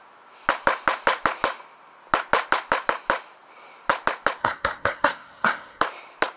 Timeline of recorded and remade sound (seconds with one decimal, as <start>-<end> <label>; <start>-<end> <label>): 0.0-4.4 recorded; 4.4-5.8 remade; 5.8-6.4 recorded

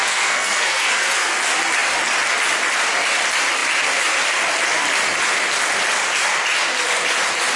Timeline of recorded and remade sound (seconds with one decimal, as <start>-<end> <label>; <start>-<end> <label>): 0.0-1.4 remade; 1.4-7.6 recorded

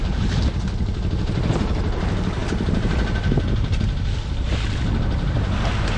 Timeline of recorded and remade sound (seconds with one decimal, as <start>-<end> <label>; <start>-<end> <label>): 0.0-6.0 recorded

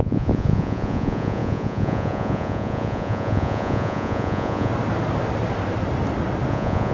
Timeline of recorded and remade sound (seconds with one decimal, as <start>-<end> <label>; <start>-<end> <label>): 0.0-4.7 remade; 4.7-6.5 recorded; 6.5-6.9 remade